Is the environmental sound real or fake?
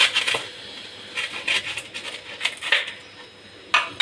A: real